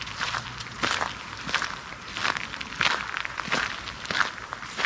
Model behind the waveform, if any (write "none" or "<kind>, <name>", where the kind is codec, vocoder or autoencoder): vocoder, BigVGAN v2